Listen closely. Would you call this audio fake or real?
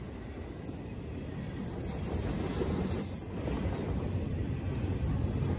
real